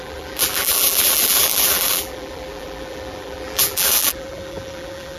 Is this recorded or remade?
remade